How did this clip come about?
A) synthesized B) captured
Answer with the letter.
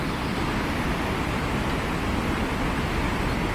B